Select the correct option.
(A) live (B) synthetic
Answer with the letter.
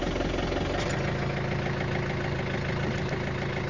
A